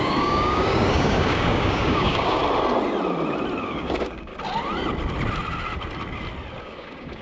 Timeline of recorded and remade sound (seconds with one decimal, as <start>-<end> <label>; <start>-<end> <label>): 0.0-2.4 remade; 2.4-3.6 recorded; 3.6-4.3 remade; 4.3-6.6 recorded; 6.6-7.2 remade